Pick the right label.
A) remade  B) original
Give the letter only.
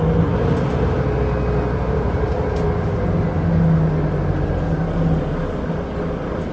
B